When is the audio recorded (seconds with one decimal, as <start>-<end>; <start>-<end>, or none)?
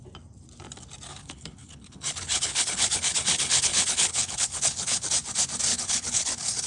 0.0-1.1; 5.1-5.7